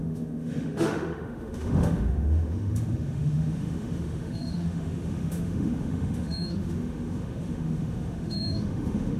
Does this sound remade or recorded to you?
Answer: remade